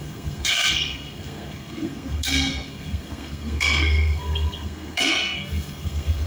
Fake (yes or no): yes